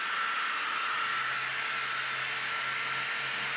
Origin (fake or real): real